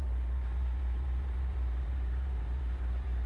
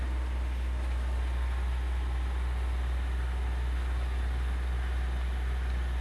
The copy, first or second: first